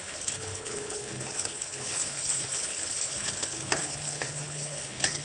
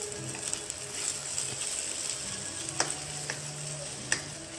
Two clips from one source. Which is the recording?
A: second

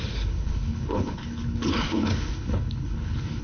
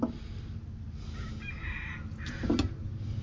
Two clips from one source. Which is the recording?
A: second